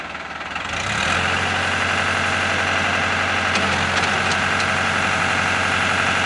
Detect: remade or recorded recorded